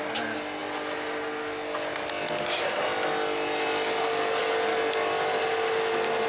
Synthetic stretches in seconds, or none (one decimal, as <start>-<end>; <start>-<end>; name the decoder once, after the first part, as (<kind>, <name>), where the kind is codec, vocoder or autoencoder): none